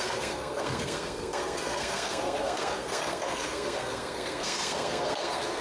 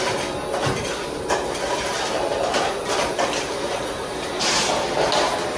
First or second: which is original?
second